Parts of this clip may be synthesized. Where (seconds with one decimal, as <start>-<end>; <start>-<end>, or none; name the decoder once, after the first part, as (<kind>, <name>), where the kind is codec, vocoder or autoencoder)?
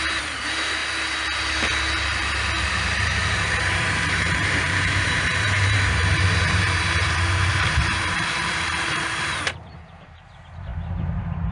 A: 0.0-0.8 (vocoder, BigVGAN v2); 2.6-10.7